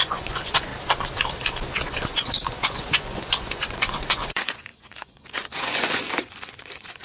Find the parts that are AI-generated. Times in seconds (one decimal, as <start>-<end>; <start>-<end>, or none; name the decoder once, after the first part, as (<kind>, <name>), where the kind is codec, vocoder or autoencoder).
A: 0.0-0.7 (vocoder, Vocos); 1.9-7.0

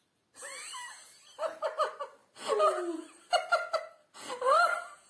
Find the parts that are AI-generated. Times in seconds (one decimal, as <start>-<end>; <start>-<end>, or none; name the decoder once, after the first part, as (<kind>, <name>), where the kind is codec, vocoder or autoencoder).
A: none